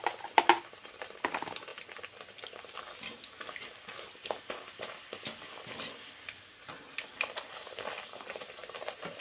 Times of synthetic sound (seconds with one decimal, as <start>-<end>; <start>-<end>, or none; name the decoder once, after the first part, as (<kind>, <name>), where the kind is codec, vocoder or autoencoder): 4.2-8.3 (vocoder, BigVGAN v2)